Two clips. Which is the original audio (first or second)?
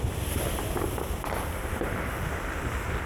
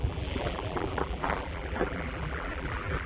first